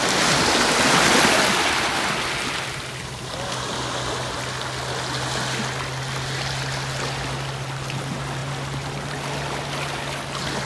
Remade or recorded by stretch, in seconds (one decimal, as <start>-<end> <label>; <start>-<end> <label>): 0.0-10.7 recorded